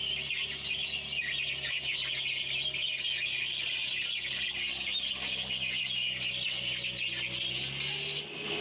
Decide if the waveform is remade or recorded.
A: recorded